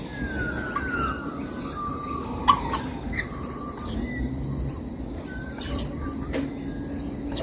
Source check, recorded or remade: recorded